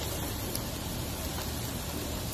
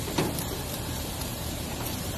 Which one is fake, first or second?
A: second